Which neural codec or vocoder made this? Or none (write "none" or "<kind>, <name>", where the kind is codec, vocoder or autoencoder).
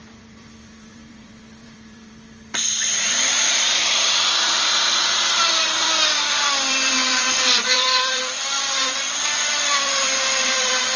vocoder, BigVGAN v2